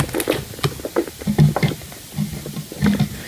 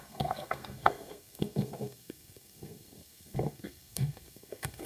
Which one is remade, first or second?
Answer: second